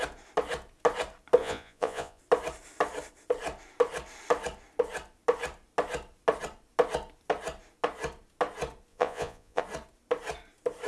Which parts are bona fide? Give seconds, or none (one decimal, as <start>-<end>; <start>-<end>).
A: 0.0-1.4; 2.2-8.9; 9.6-10.9